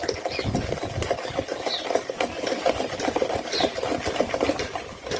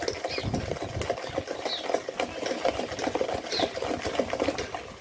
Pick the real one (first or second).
second